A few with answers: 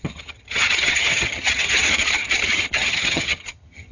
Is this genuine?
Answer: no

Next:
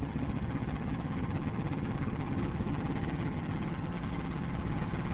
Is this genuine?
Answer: no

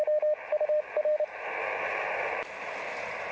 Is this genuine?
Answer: yes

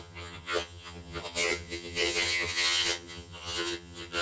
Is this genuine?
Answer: no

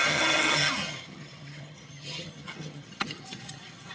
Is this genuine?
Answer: no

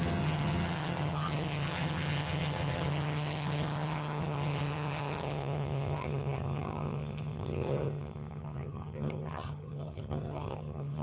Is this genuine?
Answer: no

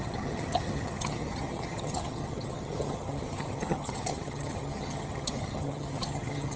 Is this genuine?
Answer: no